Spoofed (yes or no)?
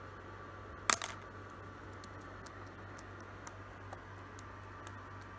no